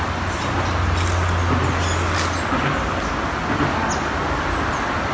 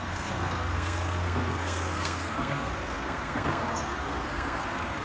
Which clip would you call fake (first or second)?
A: second